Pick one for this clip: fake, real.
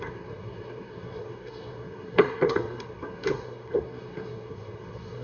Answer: fake